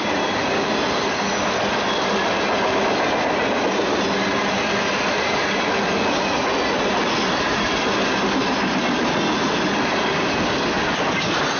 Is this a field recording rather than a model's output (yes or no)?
yes